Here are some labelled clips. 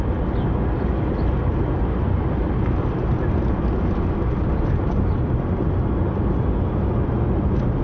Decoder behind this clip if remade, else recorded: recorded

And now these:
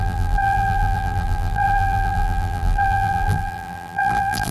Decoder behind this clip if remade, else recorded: remade, vocoder, BigVGAN v2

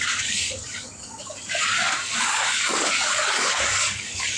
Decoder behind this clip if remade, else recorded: remade, codec, DAC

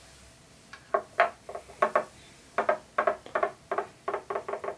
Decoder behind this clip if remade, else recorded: recorded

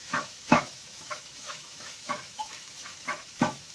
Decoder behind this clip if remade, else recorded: remade, autoencoder, DAC-VAE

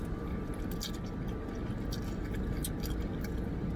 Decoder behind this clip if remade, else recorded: recorded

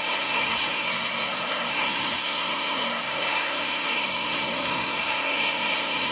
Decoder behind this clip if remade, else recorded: remade, codec, SNAC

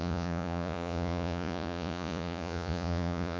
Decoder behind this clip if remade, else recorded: remade, vocoder, Vocos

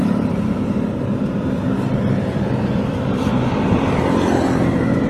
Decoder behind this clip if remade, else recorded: recorded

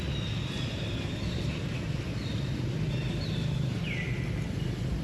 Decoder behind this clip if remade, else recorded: recorded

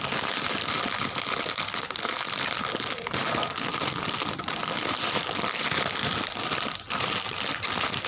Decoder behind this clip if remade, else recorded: recorded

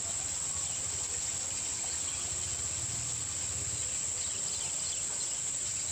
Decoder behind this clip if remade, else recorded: recorded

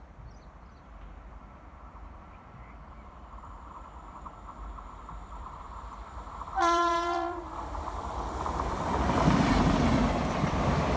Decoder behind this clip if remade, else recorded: remade, vocoder, BigVGAN v2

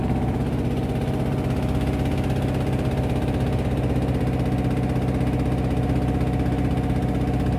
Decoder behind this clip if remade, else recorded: recorded